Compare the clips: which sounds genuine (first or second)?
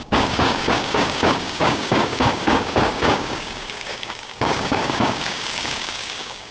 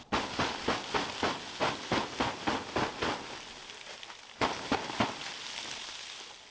second